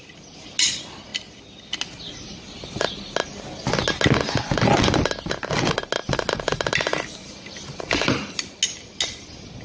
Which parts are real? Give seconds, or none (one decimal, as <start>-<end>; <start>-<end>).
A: 0.0-9.6